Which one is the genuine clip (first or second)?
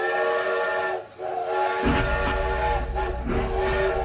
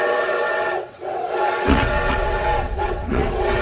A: first